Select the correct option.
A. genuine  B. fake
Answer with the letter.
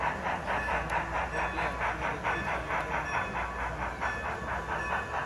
A